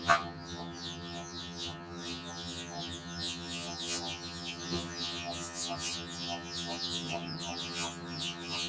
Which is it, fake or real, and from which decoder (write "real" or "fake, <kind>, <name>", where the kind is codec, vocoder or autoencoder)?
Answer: fake, vocoder, HiFi-GAN